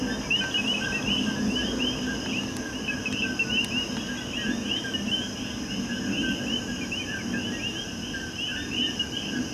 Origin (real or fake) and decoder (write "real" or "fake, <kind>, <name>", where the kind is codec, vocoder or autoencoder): real